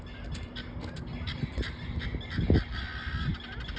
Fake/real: real